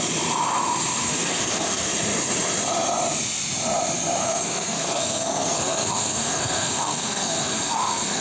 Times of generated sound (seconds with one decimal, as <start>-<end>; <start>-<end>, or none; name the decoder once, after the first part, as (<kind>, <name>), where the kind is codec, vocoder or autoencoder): 1.0-1.9 (codec, SNAC); 4.2-8.2